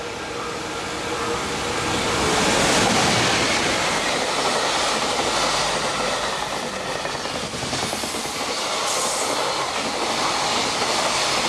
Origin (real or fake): real